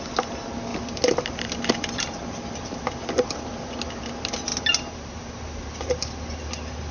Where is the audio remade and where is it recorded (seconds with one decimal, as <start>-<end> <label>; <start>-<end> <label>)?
0.0-6.9 recorded